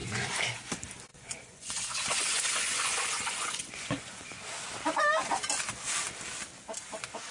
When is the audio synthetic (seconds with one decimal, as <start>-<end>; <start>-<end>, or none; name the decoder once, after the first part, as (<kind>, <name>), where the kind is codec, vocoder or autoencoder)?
0.0-0.7 (vocoder, Vocos); 1.1-4.4

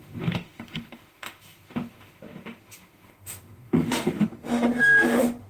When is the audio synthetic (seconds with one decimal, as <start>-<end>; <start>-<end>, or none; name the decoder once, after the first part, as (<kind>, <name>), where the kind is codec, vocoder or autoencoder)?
0.0-5.5 (autoencoder, DAC-VAE)